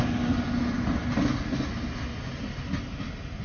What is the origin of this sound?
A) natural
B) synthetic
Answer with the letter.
A